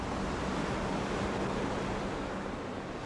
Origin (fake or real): real